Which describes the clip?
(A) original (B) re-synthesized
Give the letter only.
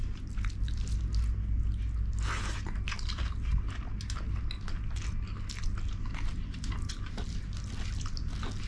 A